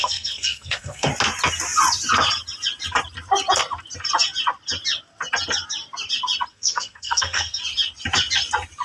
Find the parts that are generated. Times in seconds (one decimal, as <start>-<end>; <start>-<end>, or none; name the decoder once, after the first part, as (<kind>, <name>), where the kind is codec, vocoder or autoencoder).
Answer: 0.0-1.1 (codec, SNAC); 6.5-7.6